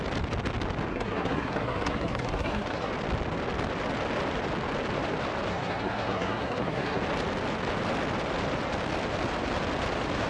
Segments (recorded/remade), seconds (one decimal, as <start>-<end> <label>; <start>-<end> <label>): 0.0-0.9 recorded; 0.9-2.9 remade; 2.9-5.5 recorded; 5.5-7.0 remade; 7.0-10.3 recorded